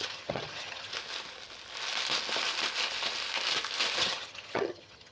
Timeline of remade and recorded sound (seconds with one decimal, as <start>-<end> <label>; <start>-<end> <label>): 0.0-0.9 remade; 0.9-4.0 recorded; 4.0-5.1 remade